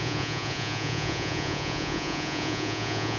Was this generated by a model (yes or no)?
yes